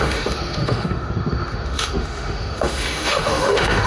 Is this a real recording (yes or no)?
no